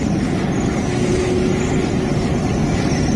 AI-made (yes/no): no